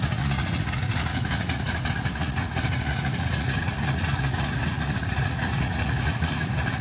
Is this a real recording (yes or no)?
no